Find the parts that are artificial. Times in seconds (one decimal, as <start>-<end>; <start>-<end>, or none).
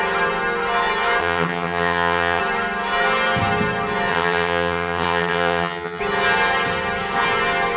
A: 1.2-2.4; 4.1-6.0